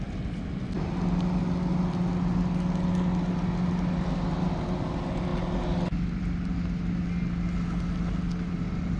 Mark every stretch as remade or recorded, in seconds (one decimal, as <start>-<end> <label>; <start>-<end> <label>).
0.0-9.0 recorded